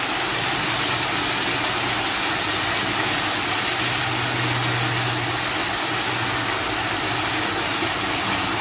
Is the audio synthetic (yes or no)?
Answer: no